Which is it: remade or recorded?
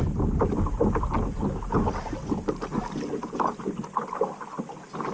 recorded